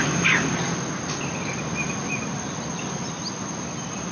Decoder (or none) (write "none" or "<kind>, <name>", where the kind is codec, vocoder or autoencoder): none